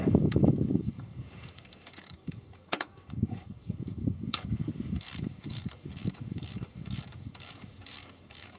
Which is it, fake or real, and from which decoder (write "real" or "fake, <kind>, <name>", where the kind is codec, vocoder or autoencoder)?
fake, codec, DAC